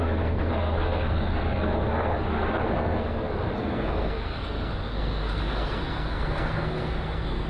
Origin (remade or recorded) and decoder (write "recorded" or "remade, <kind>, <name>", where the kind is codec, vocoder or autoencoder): remade, codec, SNAC